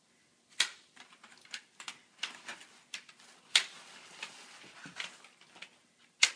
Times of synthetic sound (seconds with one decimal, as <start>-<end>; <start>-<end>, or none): none